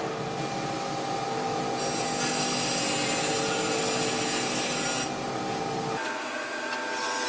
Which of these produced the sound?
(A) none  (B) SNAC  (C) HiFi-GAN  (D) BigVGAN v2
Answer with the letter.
A